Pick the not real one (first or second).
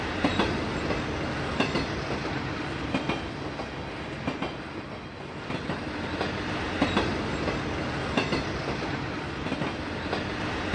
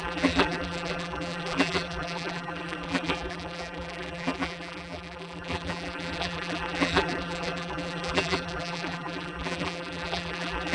second